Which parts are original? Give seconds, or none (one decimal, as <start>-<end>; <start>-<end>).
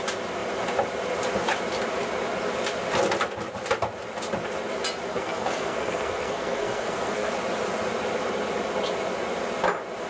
0.0-5.1; 7.3-10.1